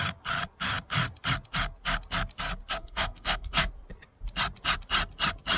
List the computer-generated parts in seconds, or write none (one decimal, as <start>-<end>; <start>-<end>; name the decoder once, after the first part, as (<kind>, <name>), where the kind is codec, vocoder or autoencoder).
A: 2.8-3.7 (codec, SNAC)